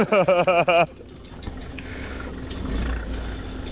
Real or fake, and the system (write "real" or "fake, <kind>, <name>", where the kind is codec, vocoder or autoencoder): real